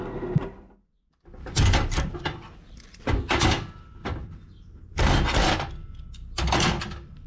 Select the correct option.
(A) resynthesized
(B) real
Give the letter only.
B